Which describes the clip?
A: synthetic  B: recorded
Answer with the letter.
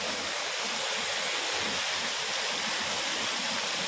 B